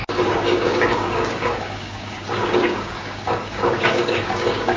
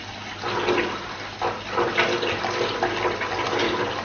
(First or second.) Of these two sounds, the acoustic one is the second